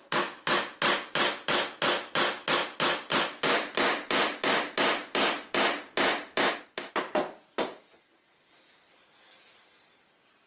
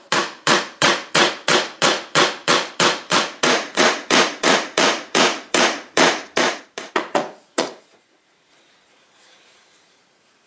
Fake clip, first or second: second